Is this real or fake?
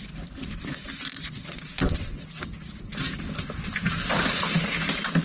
real